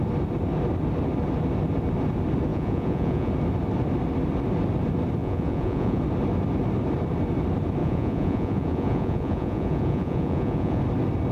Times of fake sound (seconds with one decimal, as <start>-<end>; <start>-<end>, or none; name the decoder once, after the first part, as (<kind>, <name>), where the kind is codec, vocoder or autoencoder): 2.5-3.3 (vocoder, Vocos); 5.2-6.0; 7.8-10.8